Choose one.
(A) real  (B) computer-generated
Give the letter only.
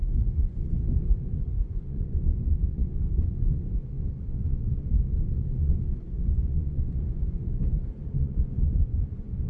B